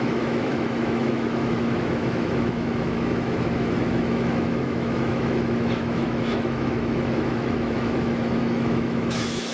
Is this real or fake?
fake